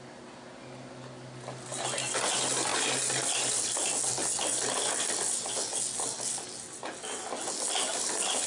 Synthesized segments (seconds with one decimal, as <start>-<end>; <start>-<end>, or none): none